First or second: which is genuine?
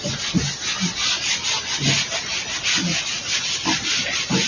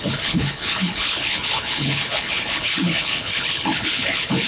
first